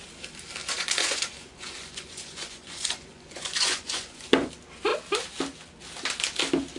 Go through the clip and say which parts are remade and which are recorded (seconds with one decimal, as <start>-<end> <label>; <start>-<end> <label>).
0.0-0.6 recorded; 0.6-4.5 remade; 4.5-6.8 recorded